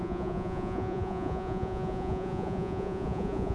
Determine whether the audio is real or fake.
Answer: fake